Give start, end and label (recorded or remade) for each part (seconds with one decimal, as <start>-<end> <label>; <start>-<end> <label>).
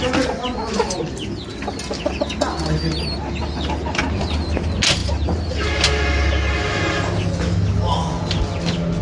0.0-9.0 recorded